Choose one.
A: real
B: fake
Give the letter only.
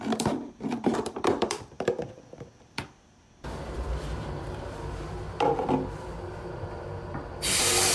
B